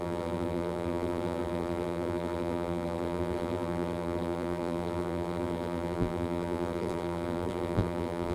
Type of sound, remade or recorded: remade